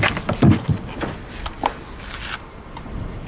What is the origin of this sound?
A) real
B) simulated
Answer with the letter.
A